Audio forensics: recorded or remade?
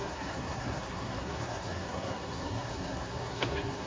remade